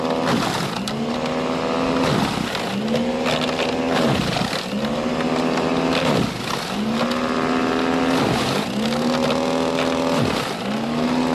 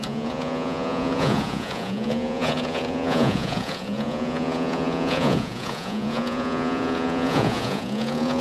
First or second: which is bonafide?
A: first